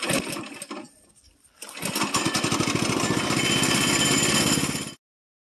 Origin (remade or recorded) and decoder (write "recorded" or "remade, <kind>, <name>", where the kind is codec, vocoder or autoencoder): recorded